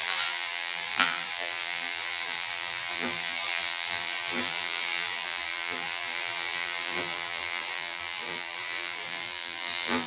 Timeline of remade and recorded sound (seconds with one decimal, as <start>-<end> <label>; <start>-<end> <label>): 0.0-10.1 remade